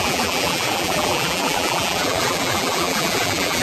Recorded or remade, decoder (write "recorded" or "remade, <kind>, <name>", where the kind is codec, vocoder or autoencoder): remade, vocoder, BigVGAN v2